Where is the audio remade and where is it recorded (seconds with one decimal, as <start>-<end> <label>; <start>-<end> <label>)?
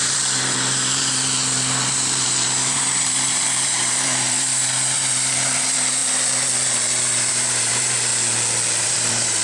0.0-6.0 remade; 6.0-7.3 recorded; 7.3-8.1 remade; 8.1-8.8 recorded; 8.8-9.4 remade